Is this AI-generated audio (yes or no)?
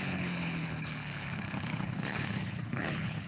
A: yes